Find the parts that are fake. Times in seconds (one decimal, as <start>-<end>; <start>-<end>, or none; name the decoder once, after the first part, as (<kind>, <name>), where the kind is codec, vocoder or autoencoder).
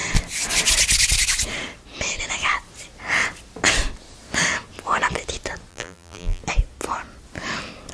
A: 5.7-6.4 (vocoder, BigVGAN v2)